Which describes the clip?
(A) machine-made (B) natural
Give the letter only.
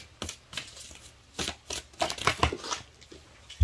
B